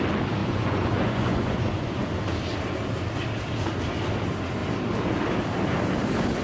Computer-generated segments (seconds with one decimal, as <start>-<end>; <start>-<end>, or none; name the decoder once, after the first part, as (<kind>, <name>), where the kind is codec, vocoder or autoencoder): 0.4-2.1 (vocoder, Vocos)